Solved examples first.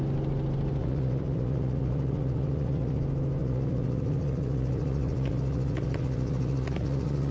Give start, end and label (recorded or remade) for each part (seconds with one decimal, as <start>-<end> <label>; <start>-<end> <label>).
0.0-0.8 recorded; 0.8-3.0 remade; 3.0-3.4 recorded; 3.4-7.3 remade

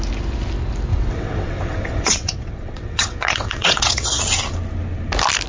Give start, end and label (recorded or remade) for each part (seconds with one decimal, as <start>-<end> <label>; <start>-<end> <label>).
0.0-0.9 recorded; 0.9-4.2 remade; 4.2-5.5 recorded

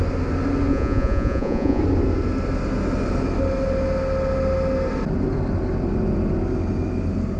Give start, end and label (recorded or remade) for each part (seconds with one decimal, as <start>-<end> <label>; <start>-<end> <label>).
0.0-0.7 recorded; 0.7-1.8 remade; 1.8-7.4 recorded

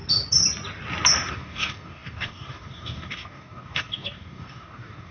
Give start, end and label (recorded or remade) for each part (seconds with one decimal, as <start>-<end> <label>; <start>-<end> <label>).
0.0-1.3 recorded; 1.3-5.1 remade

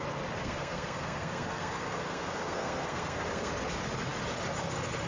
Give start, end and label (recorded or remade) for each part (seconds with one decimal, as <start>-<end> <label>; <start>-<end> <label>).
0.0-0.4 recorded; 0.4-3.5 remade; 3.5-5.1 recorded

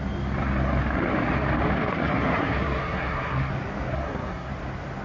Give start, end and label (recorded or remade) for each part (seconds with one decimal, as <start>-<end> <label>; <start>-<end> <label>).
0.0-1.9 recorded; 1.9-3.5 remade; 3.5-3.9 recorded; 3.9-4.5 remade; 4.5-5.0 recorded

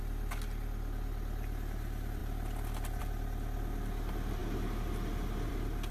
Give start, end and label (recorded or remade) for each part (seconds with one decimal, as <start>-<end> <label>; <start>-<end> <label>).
0.0-5.9 recorded